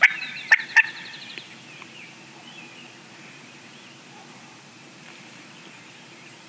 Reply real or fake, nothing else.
fake